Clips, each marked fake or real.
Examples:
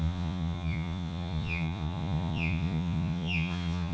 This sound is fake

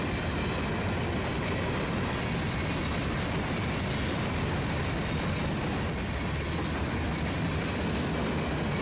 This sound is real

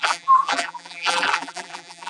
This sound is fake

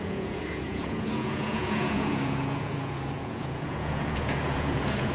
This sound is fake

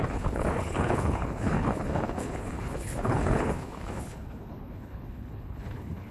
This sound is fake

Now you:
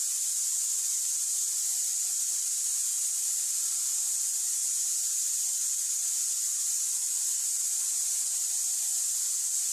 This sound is real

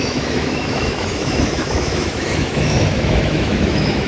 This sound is fake